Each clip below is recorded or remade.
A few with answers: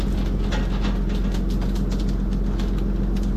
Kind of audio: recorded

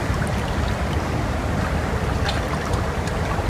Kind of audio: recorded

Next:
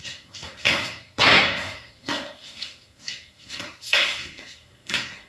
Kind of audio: remade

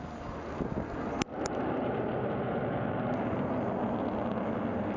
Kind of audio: recorded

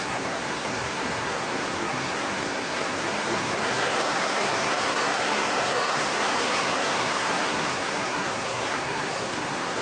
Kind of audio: remade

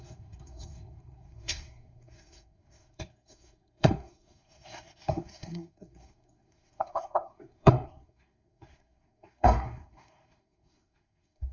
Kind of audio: remade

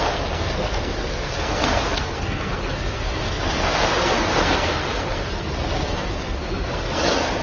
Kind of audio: remade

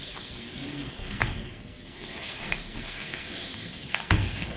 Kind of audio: remade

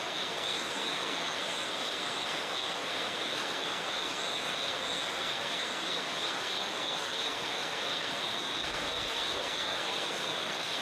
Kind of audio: remade